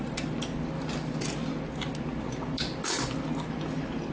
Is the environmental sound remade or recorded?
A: recorded